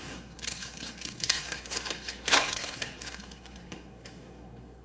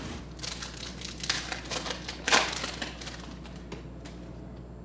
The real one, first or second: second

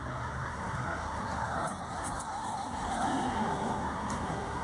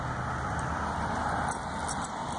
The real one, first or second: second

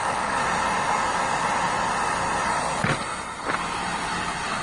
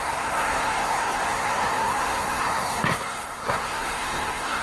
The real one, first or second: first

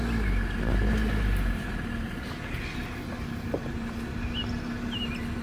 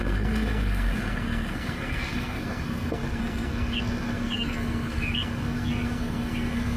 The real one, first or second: first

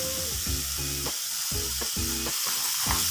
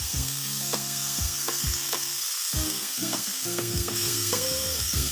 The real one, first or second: first